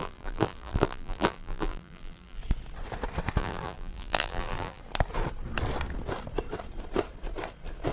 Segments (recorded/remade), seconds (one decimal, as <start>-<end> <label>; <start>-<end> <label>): 0.0-2.4 remade; 2.4-3.4 recorded; 3.4-4.8 remade; 4.8-7.9 recorded